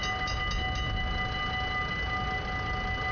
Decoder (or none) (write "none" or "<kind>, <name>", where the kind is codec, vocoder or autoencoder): none